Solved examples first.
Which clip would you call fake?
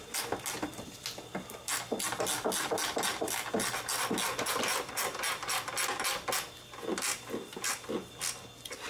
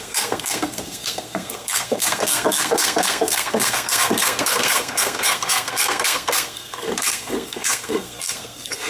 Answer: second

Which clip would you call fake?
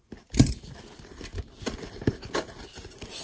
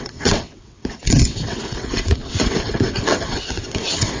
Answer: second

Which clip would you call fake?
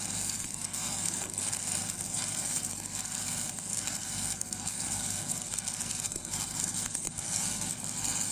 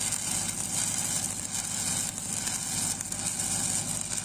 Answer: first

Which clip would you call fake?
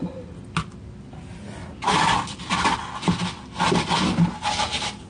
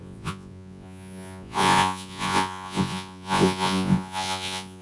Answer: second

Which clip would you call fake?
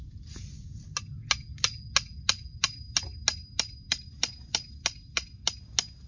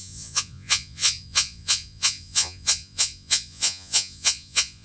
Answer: second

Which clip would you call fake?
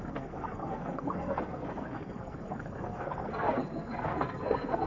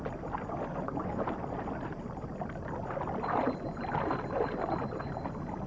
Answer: first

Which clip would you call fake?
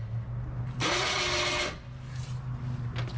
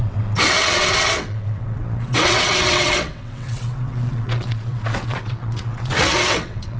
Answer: second